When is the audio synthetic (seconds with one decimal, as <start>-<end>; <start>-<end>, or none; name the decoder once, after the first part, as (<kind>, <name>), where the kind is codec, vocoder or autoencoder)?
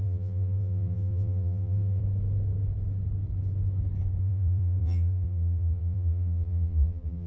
0.0-2.0 (vocoder, BigVGAN v2); 4.2-7.3